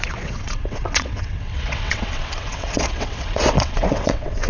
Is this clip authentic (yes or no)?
no